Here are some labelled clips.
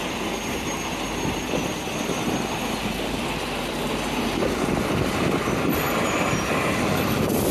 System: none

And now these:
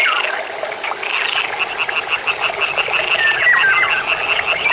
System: none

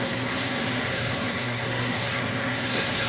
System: codec, SNAC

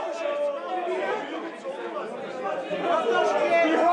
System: none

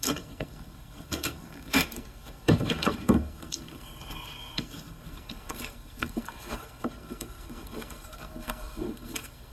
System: codec, SNAC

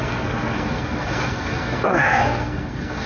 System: codec, SNAC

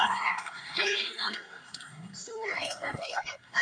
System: codec, SNAC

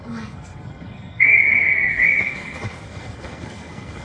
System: codec, SNAC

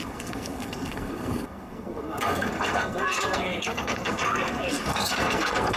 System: codec, SNAC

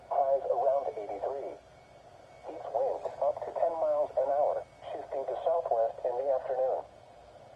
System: none